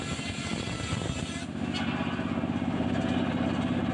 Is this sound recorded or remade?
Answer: recorded